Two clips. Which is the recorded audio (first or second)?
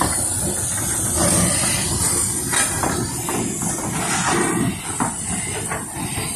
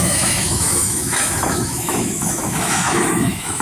first